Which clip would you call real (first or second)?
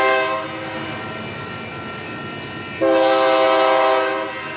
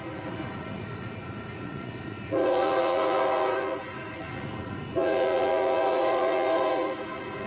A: first